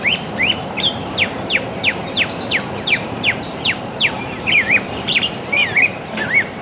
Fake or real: fake